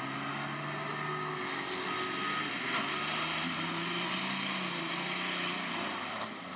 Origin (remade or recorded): recorded